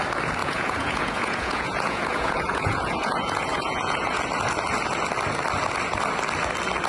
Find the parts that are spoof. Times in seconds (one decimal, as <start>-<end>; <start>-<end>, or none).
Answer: 0.4-4.2